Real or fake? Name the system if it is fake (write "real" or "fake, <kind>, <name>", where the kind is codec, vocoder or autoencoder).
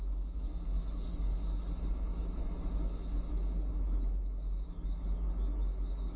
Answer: fake, autoencoder, DAC-VAE